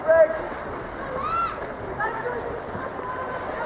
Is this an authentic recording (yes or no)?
yes